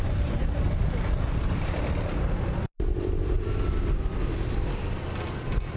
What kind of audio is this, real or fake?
real